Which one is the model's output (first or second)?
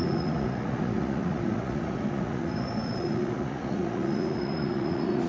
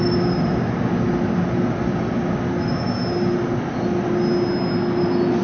first